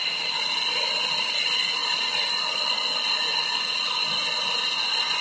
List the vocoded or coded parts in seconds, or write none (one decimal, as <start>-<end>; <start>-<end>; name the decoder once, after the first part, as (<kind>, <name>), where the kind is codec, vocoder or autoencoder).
none